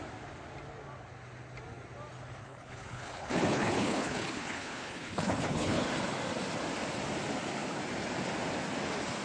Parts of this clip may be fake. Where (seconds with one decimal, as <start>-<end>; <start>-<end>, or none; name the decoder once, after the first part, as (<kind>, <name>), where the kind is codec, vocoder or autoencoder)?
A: 2.4-5.9 (codec, HILCodec)